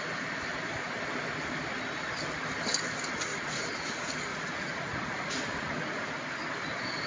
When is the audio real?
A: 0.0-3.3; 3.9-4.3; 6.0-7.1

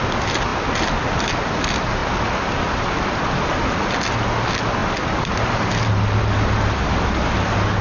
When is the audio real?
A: 0.0-7.8

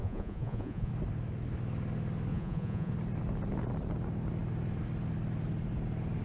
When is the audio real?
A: 0.9-2.3; 2.9-6.2

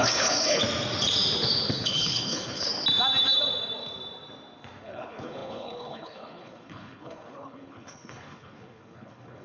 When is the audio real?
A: 0.6-1.7; 2.7-4.8